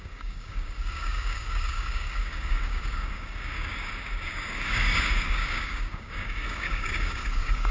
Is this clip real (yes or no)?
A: no